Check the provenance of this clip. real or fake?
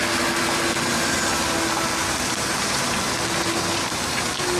real